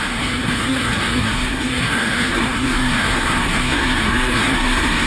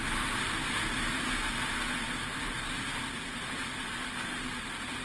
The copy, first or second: first